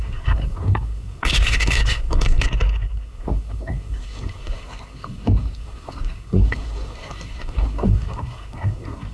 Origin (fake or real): fake